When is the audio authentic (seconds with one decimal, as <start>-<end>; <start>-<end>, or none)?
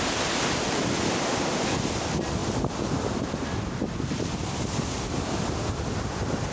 0.0-6.5